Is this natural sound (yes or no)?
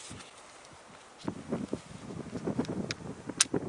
yes